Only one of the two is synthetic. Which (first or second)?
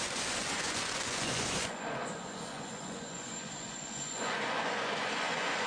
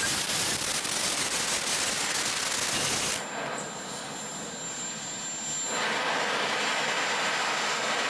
first